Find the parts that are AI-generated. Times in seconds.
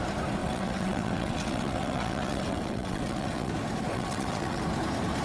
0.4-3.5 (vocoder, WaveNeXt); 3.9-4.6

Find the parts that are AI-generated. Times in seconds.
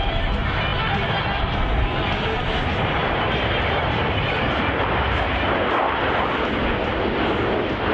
3.0-5.7 (vocoder, BigVGAN v2)